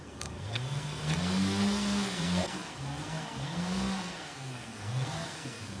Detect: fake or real fake